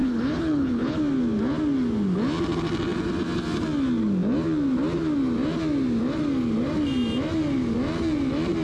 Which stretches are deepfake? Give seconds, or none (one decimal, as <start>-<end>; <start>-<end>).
0.0-1.0